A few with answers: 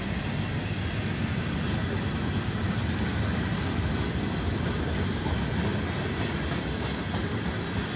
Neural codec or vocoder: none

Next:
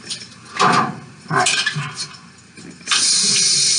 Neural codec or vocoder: none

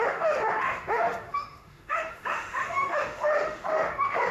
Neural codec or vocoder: autoencoder, DAC-VAE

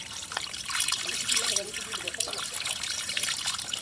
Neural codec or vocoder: vocoder, BigVGAN v2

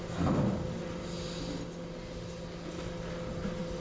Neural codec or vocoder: none